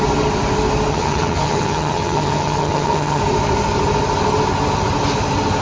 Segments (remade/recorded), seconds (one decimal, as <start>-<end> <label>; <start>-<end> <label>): 0.0-0.9 recorded; 0.9-3.2 remade; 3.2-5.6 recorded